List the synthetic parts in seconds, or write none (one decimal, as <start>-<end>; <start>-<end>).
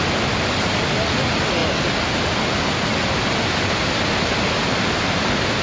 none